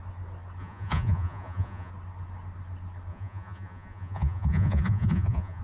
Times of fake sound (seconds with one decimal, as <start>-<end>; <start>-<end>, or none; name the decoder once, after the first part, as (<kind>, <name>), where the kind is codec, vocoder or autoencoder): 0.6-1.9 (vocoder, Vocos); 3.1-5.6